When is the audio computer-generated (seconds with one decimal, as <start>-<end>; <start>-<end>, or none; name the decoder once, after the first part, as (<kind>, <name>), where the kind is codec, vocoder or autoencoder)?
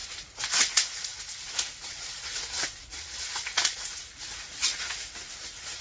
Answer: 0.0-5.8 (vocoder, Vocos)